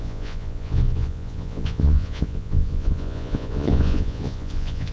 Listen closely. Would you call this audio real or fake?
fake